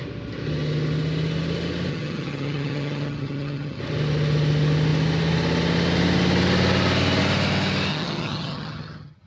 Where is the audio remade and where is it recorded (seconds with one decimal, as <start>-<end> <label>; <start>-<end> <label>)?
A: 0.0-1.9 recorded; 1.9-3.8 remade; 3.8-7.9 recorded; 7.9-9.3 remade